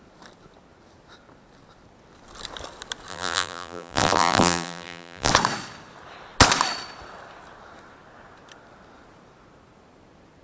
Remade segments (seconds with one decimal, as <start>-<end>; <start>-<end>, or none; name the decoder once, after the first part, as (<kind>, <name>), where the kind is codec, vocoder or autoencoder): 3.1-5.3 (vocoder, BigVGAN v2)